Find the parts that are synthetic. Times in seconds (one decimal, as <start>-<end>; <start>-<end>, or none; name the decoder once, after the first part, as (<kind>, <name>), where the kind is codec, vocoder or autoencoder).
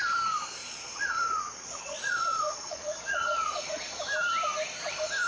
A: 0.6-3.8 (vocoder, Vocos)